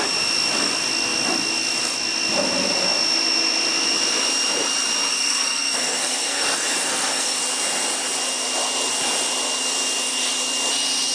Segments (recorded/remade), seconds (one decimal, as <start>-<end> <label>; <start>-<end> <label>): 0.0-5.1 recorded; 5.1-7.4 remade; 7.4-11.1 recorded